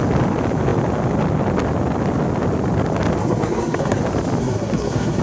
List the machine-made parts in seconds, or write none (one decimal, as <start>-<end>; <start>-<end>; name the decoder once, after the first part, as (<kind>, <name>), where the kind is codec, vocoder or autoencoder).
3.2-4.0 (codec, SNAC); 4.4-5.2